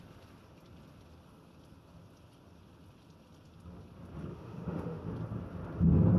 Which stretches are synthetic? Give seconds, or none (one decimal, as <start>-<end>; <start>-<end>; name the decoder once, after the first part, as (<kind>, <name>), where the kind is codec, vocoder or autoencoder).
4.3-5.1 (autoencoder, DAC-VAE)